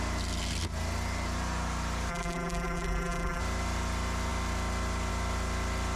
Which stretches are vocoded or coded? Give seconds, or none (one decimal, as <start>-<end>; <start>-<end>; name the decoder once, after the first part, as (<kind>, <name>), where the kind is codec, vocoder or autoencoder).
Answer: 2.1-3.4 (vocoder, BigVGAN v2)